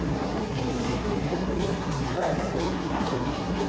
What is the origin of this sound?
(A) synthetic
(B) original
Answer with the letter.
A